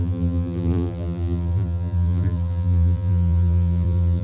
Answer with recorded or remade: remade